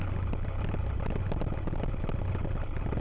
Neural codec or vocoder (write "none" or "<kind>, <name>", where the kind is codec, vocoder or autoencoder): none